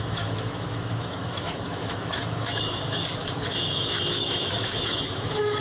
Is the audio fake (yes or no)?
yes